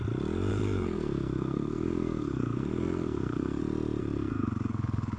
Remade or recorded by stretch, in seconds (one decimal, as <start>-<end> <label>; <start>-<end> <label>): 0.0-0.5 recorded; 0.5-3.6 remade; 3.6-4.0 recorded; 4.0-5.2 remade